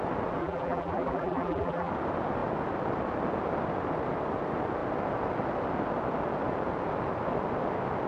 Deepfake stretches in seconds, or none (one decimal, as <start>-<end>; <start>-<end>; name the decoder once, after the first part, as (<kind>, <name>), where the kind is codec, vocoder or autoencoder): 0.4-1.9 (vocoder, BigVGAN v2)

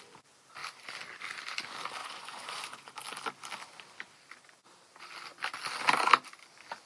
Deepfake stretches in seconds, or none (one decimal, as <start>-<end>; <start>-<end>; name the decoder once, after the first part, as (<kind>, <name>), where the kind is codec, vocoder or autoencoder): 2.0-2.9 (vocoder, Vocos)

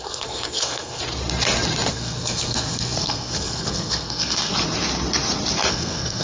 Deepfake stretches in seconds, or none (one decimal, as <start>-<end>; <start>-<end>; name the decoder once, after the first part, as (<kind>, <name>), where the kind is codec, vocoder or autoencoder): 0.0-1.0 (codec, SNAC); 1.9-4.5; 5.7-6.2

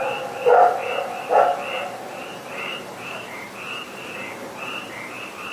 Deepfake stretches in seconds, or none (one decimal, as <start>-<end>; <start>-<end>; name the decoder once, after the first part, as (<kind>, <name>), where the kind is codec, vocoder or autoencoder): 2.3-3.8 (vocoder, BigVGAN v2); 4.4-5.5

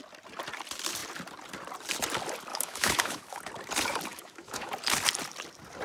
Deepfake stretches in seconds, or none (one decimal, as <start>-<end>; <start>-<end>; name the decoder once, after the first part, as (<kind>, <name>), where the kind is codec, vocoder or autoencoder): 2.5-3.4 (autoencoder, DAC-VAE); 4.1-4.7

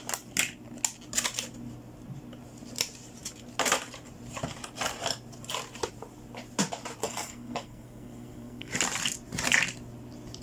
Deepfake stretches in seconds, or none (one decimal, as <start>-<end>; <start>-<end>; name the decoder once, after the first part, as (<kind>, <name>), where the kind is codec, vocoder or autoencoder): 7.0-8.7 (codec, SNAC)